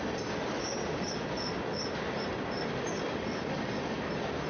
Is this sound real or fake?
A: real